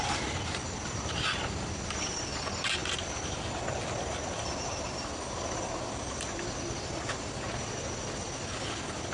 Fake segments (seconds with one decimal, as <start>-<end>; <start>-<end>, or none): none